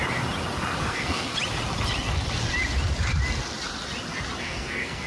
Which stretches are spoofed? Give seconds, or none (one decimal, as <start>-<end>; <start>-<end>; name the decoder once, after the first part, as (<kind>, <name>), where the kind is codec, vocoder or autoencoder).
0.8-1.3 (codec, SNAC); 4.4-5.1